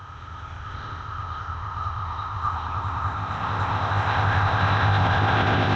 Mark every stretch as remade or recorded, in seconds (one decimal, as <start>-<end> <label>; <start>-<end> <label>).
0.0-5.8 remade